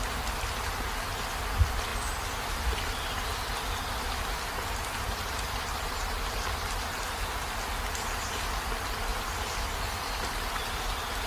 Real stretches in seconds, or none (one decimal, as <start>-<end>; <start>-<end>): 0.0-1.9; 2.9-3.3; 4.4-9.1; 9.7-11.3

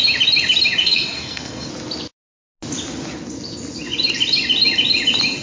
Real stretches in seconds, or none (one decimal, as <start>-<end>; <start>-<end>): 0.0-0.8; 1.7-5.4

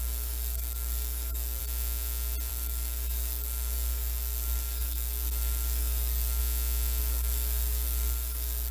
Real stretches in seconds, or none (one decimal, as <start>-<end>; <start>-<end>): 1.6-2.5; 6.4-7.0

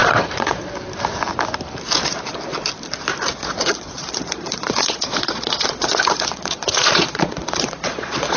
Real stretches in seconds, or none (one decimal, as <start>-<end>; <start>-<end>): 0.7-3.4

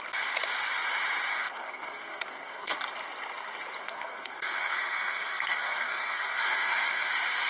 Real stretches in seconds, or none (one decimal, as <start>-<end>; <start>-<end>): 0.0-1.3; 2.8-3.8; 7.1-7.5

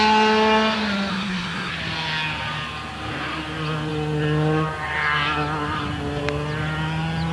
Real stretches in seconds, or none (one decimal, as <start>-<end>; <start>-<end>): 0.0-1.1; 1.7-7.3